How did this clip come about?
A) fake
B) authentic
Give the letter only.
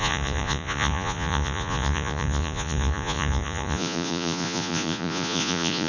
A